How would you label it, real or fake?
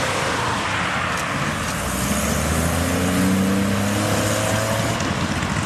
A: real